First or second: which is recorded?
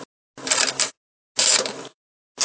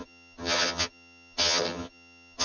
first